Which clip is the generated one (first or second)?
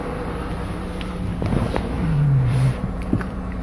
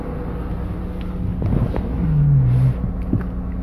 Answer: first